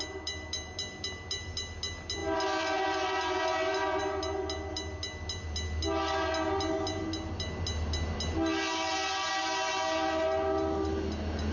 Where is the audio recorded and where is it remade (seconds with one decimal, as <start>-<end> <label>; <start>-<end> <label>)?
0.0-11.5 recorded